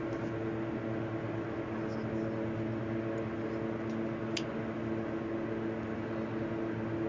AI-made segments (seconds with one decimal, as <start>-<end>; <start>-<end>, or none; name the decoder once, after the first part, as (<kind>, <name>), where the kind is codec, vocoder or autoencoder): none